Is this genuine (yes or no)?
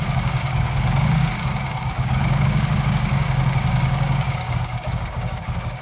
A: no